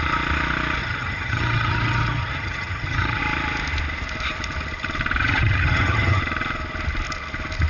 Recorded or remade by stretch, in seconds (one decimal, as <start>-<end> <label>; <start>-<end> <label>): 0.0-0.8 recorded; 0.8-3.2 remade; 3.2-5.2 recorded; 5.2-6.2 remade; 6.2-7.7 recorded